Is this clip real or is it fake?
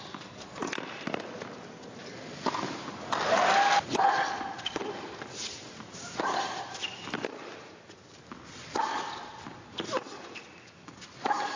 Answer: real